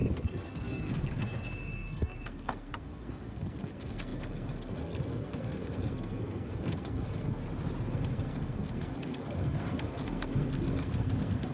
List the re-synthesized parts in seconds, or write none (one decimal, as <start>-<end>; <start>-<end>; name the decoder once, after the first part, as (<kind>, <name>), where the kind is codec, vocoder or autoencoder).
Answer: 0.0-7.4 (codec, SNAC); 7.9-11.5